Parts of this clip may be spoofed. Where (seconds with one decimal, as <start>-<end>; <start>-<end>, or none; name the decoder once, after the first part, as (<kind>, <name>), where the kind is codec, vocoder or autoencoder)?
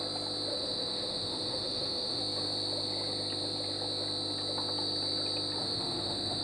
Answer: 0.5-2.2 (autoencoder, DAC-VAE); 5.6-6.4